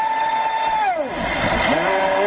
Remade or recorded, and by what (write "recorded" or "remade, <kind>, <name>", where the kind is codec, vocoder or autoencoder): recorded